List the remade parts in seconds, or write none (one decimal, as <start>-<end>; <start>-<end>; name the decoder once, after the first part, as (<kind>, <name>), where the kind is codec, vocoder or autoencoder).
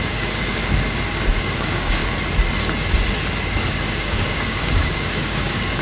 0.0-0.6 (codec, DAC); 1.3-2.0; 3.5-5.8